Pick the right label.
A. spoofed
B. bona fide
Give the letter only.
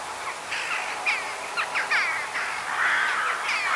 B